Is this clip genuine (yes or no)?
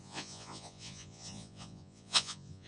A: no